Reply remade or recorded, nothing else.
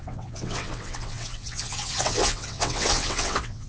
remade